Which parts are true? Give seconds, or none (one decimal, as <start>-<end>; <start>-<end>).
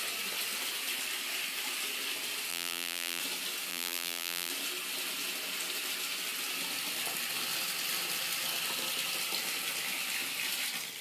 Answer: 0.0-2.5; 3.2-3.7; 4.5-11.0